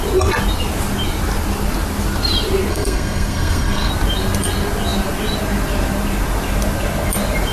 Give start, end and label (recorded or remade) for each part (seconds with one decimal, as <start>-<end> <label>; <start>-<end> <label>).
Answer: 0.0-2.7 recorded; 2.7-3.9 remade; 3.9-7.5 recorded